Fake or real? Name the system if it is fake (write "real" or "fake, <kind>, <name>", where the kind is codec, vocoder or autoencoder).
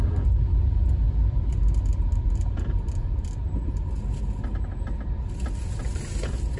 real